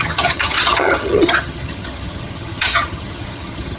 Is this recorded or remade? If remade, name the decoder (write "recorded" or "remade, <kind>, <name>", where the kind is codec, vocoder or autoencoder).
remade, vocoder, HiFi-GAN